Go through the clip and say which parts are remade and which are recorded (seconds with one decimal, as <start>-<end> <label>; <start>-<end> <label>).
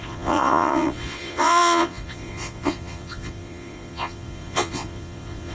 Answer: 0.0-5.5 remade